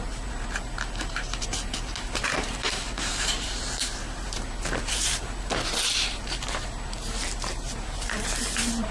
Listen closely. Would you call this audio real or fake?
fake